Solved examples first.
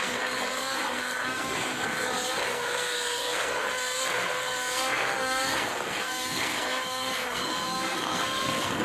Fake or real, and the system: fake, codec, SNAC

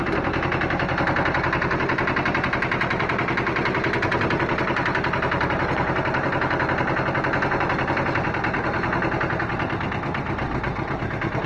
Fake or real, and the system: real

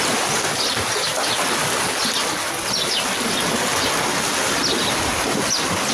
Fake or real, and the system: real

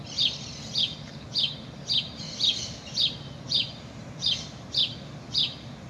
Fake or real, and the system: real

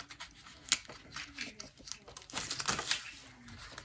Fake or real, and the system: real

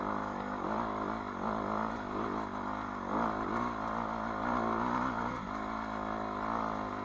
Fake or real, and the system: real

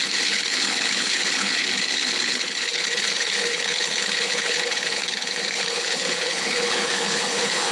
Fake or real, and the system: fake, codec, HILCodec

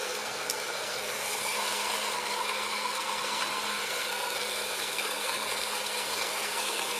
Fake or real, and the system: fake, codec, SNAC